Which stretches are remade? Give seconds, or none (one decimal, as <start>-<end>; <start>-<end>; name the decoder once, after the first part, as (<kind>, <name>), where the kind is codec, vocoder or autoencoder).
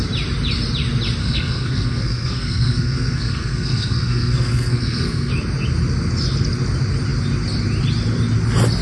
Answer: 1.2-5.3 (codec, SNAC)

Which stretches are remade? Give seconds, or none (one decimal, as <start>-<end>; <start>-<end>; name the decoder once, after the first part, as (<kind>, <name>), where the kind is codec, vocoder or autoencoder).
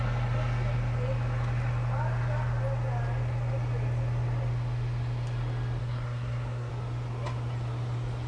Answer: 5.8-6.7 (codec, SNAC)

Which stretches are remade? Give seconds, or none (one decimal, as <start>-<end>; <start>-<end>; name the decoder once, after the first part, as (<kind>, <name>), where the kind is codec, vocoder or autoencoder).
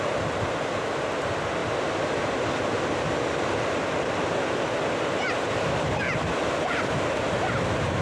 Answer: none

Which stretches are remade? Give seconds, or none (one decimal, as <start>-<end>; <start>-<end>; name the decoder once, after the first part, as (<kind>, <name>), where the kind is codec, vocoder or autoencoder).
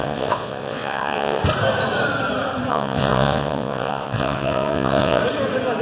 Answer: 0.0-1.4 (vocoder, WaveNeXt); 2.7-5.2